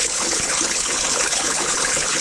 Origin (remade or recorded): remade